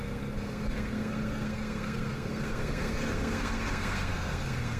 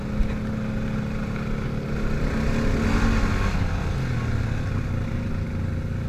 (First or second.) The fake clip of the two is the first